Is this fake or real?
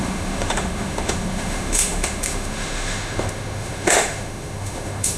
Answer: fake